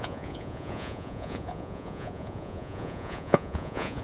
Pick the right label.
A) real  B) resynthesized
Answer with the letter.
B